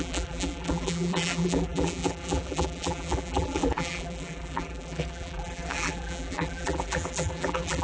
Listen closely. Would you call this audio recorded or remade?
remade